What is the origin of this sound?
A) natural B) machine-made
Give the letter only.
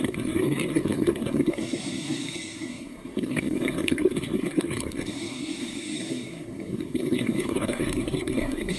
B